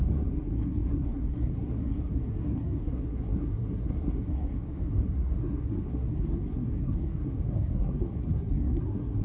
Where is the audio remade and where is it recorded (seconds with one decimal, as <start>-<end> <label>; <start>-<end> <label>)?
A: 0.0-9.2 remade